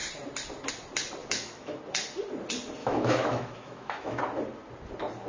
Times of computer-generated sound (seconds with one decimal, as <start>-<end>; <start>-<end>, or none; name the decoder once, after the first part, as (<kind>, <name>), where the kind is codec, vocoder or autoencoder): 1.2-1.8 (autoencoder, DAC-VAE); 2.8-4.2